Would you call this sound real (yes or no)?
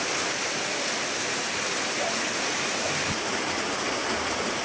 yes